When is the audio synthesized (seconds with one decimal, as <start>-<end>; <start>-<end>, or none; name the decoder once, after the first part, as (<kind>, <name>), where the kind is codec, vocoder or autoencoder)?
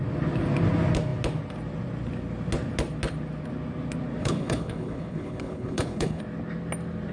4.2-6.2 (codec, HILCodec)